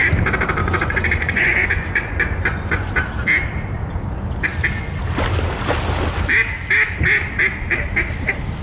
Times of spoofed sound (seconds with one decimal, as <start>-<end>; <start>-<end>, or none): 0.6-2.9